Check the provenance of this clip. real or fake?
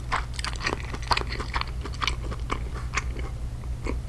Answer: real